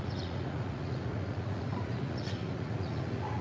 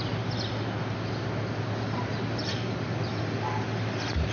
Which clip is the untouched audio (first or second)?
second